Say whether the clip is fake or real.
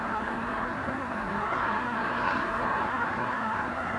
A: fake